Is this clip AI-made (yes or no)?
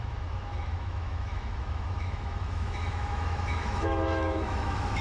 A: yes